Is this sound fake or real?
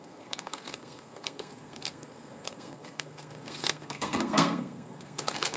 fake